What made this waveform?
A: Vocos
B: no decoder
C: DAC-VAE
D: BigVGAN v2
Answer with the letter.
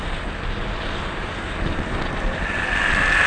B